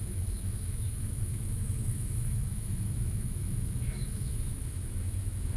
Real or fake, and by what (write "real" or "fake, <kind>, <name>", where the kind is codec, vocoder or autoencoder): fake, autoencoder, DAC-VAE